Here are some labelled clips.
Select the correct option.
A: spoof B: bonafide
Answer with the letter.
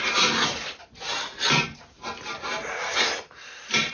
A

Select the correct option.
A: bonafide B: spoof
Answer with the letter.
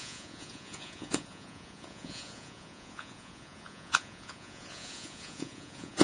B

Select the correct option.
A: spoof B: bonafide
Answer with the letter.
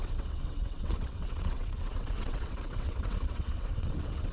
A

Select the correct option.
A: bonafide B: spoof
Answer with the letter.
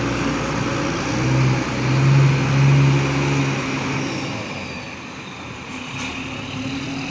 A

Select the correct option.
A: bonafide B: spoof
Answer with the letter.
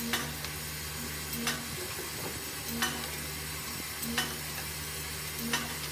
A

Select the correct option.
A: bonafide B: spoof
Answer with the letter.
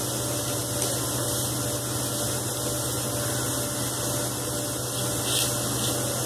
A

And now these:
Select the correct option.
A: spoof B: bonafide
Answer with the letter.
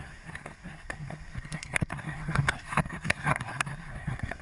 A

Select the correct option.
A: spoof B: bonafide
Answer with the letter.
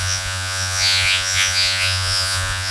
A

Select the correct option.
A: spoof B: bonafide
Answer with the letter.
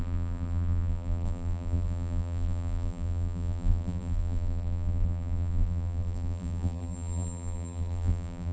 A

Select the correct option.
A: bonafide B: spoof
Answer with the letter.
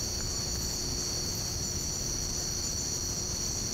A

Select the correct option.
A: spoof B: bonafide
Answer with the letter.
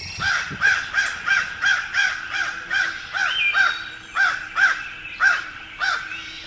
B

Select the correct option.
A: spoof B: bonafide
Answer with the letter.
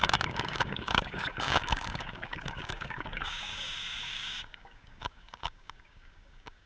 A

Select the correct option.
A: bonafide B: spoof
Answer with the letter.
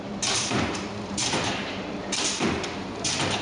B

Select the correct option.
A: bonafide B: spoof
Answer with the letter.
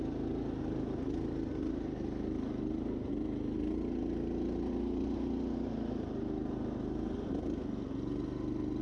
A